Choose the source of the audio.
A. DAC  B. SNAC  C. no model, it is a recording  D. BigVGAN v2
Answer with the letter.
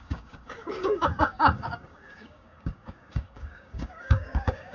A